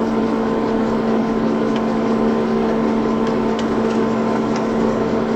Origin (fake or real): fake